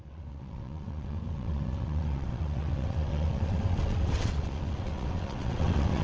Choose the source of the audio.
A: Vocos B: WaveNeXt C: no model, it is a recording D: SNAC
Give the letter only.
B